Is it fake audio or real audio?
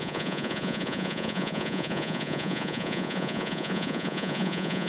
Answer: fake